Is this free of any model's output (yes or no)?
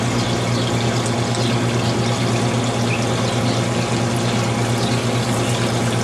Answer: yes